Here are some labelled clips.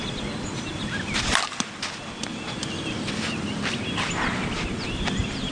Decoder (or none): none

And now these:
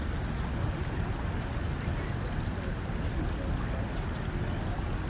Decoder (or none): none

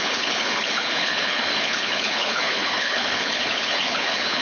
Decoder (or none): codec, HILCodec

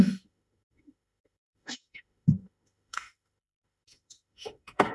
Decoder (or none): autoencoder, DAC-VAE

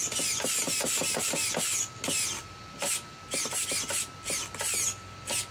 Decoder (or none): none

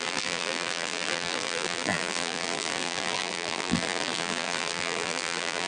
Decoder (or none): vocoder, BigVGAN v2